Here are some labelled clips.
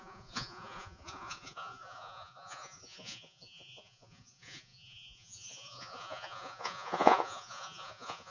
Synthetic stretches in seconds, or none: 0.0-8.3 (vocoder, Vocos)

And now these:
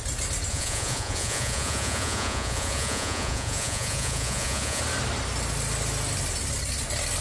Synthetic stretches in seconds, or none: 0.5-4.8 (vocoder, Vocos)

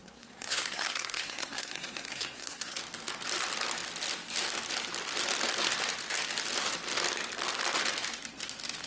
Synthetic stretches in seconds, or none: 0.0-2.8 (codec, SNAC)